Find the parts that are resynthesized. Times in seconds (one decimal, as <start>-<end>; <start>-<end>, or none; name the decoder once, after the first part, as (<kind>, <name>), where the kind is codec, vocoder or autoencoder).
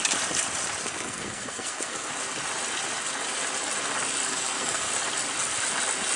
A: 0.8-2.1 (codec, SNAC); 4.3-4.9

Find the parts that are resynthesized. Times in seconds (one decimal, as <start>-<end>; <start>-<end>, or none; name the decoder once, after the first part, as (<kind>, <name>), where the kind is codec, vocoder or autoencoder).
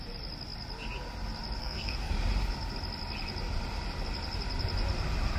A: 1.6-2.1 (codec, SNAC)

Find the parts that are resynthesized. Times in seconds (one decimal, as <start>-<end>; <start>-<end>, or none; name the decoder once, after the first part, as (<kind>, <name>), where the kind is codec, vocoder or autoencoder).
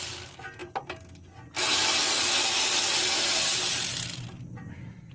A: none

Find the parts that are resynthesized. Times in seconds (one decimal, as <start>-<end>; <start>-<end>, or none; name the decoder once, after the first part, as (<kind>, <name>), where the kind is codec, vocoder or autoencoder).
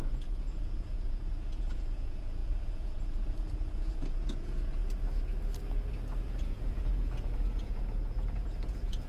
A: 0.0-4.8 (vocoder, Vocos); 6.4-9.1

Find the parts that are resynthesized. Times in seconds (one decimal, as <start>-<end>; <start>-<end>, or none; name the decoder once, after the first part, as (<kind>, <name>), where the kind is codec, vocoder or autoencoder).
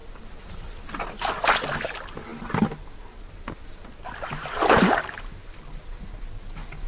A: none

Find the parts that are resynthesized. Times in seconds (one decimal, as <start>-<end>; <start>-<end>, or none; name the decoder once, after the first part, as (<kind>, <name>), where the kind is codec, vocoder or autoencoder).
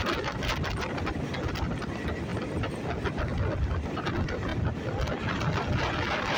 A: none